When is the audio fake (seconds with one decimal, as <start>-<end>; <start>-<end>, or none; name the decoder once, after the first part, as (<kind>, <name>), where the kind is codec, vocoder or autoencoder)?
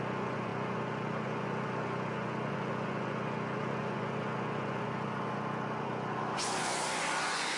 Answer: 0.0-7.6 (vocoder, Vocos)